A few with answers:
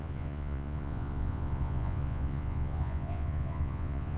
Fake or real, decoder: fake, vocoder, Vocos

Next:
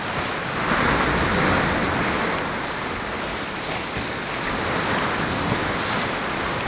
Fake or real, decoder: real